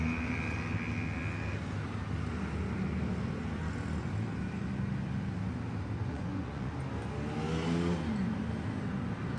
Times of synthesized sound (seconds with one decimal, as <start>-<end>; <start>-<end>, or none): 6.0-6.7